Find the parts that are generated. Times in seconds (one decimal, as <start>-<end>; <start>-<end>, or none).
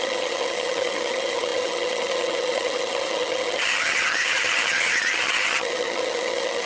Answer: 0.0-6.7